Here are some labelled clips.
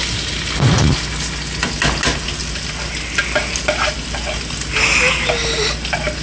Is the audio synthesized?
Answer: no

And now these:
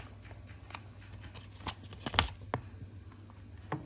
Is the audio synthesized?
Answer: no